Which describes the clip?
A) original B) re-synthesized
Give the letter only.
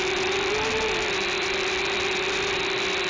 B